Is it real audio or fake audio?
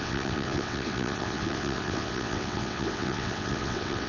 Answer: fake